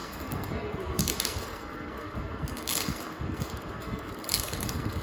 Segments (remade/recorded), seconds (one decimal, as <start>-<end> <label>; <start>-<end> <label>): 0.0-5.0 remade

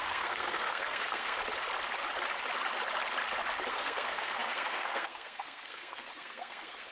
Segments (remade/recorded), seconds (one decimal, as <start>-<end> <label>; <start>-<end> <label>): 0.0-1.4 remade; 1.4-3.7 recorded; 3.7-6.9 remade

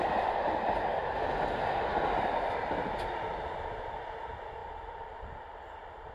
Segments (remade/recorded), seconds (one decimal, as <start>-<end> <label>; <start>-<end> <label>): 0.0-4.6 recorded; 4.6-6.1 remade

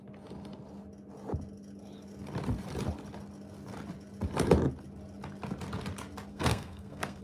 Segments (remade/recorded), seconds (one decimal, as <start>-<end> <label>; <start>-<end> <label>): 0.0-6.3 recorded; 6.3-7.2 remade

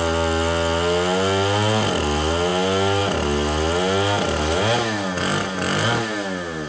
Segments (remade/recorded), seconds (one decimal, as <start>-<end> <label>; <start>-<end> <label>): 0.0-6.7 recorded

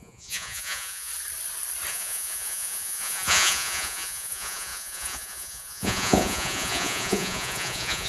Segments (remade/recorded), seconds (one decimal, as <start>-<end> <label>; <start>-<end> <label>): 0.0-1.1 remade; 1.1-1.9 recorded; 1.9-8.1 remade

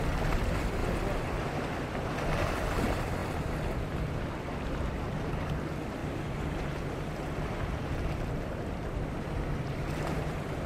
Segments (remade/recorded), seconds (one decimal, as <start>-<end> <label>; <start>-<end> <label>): 0.0-0.8 remade; 0.8-1.9 recorded; 1.9-3.2 remade; 3.2-3.8 recorded; 3.8-6.0 remade; 6.0-6.9 recorded; 6.9-10.7 remade